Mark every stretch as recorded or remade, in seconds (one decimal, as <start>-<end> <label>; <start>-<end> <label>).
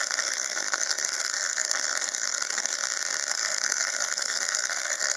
0.0-2.8 remade; 2.8-3.3 recorded; 3.3-5.2 remade